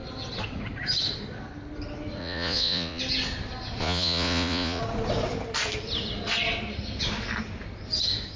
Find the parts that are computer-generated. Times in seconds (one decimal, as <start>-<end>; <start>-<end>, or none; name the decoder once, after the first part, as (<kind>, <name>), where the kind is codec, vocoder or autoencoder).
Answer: 2.2-3.0 (vocoder, Vocos); 3.8-4.8

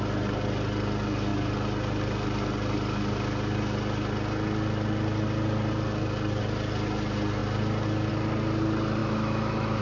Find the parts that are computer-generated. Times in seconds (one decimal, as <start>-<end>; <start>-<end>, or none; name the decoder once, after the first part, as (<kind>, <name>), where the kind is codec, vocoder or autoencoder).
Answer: 9.0-9.8 (autoencoder, DAC-VAE)

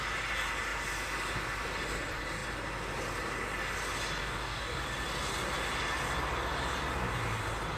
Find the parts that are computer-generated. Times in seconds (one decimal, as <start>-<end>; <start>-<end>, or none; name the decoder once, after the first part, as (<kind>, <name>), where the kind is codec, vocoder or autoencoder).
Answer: 4.2-4.8 (codec, DAC)

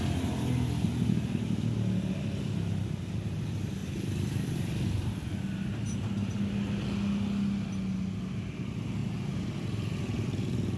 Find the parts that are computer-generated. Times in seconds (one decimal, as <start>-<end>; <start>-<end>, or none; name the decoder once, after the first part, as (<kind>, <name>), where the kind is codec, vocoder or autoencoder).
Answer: 3.8-6.4 (vocoder, BigVGAN v2); 9.0-10.0

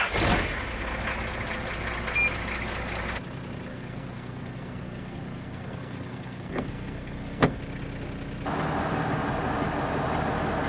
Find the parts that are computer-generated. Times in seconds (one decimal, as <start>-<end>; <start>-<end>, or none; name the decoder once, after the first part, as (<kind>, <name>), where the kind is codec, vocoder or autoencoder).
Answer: 3.7-7.6 (codec, SNAC)

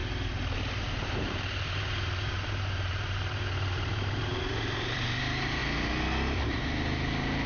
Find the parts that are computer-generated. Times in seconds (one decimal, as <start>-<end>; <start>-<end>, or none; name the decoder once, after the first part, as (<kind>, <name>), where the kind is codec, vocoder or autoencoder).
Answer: 0.0-5.6 (vocoder, BigVGAN v2)

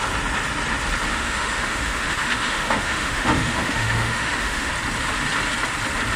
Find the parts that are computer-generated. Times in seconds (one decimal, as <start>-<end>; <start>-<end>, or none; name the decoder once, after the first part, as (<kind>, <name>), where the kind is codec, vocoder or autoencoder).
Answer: 1.1-4.7 (autoencoder, DAC-VAE)

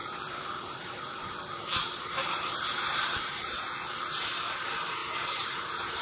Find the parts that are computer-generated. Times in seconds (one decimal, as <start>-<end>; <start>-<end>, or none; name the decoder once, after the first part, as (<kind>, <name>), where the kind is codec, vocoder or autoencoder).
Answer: 0.0-3.6 (vocoder, BigVGAN v2); 5.0-6.0